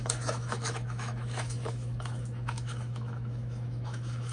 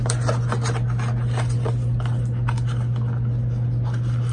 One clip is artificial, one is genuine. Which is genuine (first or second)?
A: second